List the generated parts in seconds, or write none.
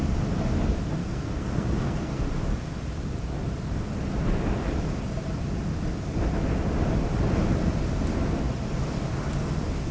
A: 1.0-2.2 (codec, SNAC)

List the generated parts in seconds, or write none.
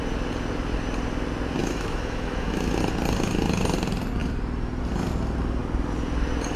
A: 1.6-2.8 (autoencoder, DAC-VAE)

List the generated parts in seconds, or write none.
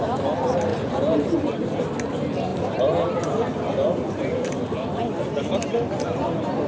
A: 0.7-1.5 (vocoder, BigVGAN v2); 2.5-5.0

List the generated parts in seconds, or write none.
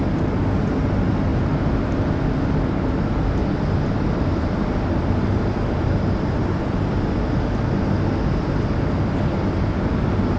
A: none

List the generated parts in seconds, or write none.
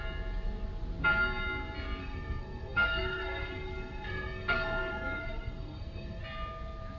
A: 2.0-6.2 (codec, SNAC)